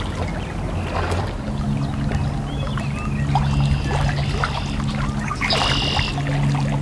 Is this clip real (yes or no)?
yes